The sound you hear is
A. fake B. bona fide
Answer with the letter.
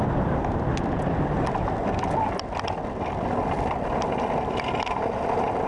B